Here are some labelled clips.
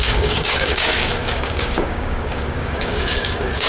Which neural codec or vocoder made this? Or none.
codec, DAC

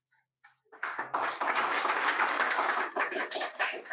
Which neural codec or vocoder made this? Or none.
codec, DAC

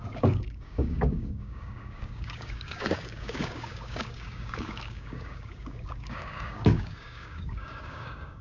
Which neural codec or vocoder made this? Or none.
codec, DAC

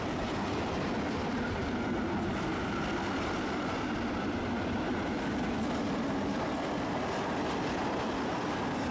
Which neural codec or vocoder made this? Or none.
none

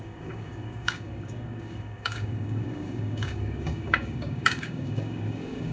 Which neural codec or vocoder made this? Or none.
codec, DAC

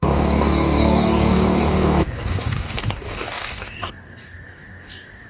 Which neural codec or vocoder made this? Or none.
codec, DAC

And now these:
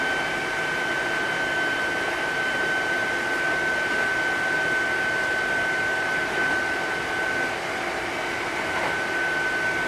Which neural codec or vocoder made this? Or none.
none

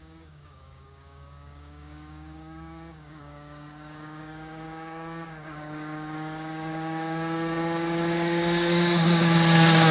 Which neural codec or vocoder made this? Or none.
codec, DAC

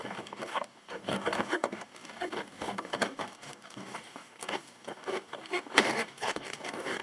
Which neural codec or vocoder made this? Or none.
codec, DAC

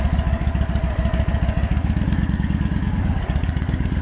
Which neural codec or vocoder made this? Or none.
codec, DAC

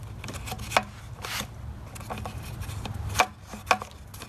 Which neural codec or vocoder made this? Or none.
none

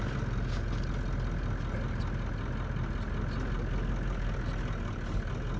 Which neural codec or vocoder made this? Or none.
none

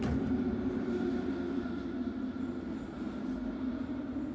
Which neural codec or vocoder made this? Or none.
none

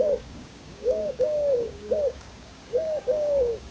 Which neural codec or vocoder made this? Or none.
codec, DAC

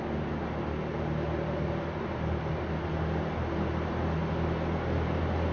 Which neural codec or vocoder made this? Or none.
none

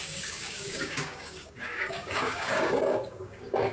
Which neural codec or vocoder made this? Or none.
codec, DAC